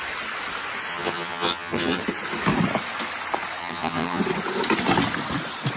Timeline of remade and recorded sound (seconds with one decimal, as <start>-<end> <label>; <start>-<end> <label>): 0.0-0.9 recorded; 0.9-2.0 remade; 2.0-3.6 recorded; 3.6-4.2 remade; 4.2-5.8 recorded